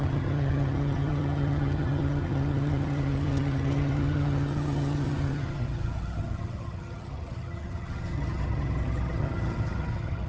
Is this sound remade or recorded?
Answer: remade